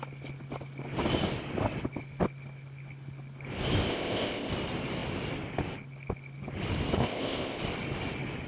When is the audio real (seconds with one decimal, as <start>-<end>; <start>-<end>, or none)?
0.0-3.9; 4.5-7.0; 7.6-8.5